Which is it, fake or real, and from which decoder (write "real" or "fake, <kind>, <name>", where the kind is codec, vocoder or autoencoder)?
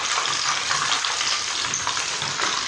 real